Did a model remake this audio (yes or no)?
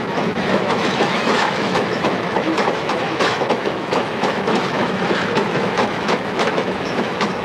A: yes